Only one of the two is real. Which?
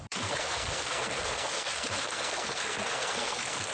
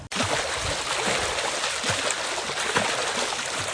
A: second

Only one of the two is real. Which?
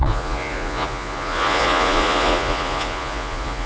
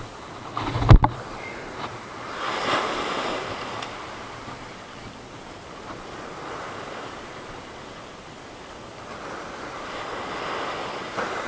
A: second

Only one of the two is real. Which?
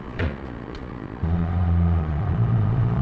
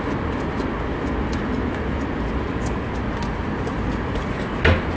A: second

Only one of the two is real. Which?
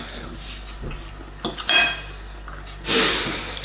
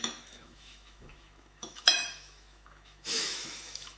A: first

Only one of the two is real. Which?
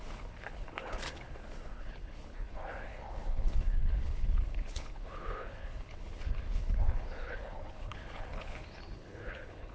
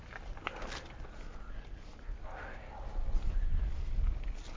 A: second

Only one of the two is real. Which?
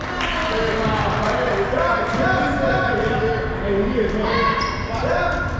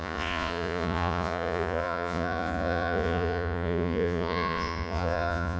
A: first